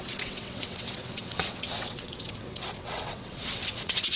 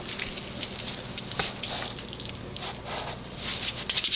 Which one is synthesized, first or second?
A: first